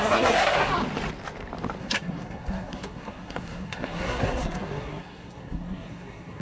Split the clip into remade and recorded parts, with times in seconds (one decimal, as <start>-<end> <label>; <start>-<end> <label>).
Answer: 0.0-0.7 remade; 0.7-1.8 recorded; 1.8-6.4 remade